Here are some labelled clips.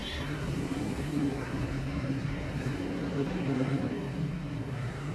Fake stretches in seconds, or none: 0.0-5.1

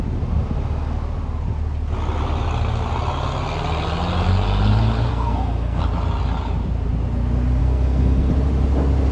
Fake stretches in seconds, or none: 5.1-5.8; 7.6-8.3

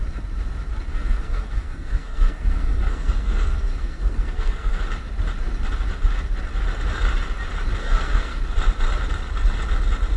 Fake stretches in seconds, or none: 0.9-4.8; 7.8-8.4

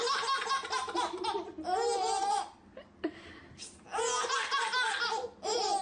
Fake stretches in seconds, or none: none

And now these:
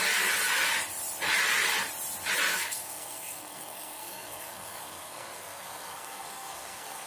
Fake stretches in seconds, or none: 2.5-7.1

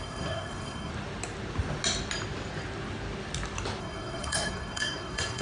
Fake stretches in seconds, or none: 0.0-0.9; 3.8-5.4

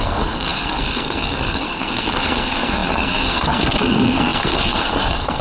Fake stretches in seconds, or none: 0.0-5.4

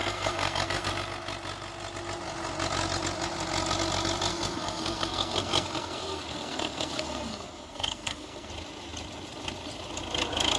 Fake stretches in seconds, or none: 0.0-0.9; 4.3-8.5